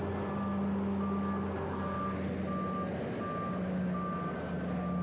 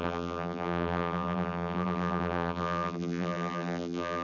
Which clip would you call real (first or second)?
first